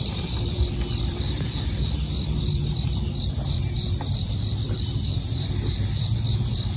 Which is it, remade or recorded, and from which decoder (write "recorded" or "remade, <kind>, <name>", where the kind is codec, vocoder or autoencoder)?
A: remade, vocoder, BigVGAN v2